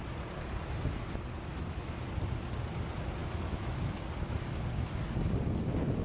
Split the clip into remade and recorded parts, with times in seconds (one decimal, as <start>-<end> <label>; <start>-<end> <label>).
0.0-1.5 recorded; 1.5-2.0 remade; 2.0-3.2 recorded; 3.2-3.9 remade; 3.9-6.0 recorded